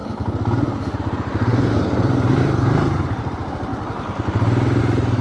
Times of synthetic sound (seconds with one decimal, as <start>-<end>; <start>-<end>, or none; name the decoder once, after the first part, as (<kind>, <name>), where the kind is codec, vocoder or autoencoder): 1.0-3.7 (vocoder, BigVGAN v2); 4.8-5.2

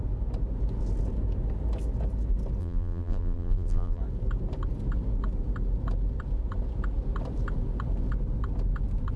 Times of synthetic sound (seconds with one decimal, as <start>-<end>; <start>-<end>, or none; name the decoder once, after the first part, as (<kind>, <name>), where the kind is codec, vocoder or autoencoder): 2.6-4.0 (vocoder, BigVGAN v2)